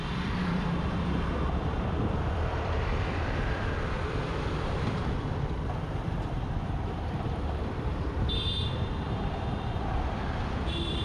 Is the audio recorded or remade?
remade